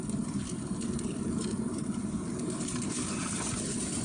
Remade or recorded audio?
recorded